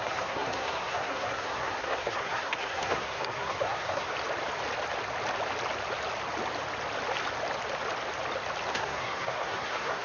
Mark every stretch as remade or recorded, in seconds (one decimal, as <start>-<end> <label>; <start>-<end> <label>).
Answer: 0.0-4.1 remade; 4.1-8.7 recorded; 8.7-10.0 remade